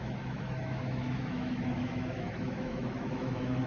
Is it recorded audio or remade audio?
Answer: remade